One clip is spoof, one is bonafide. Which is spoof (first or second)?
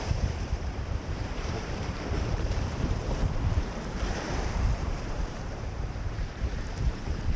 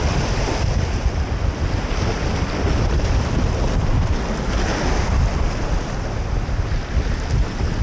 first